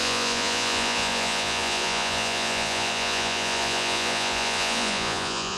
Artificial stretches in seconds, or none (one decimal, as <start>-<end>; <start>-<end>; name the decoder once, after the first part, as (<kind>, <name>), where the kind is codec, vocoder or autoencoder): 0.0-5.6 (vocoder, Vocos)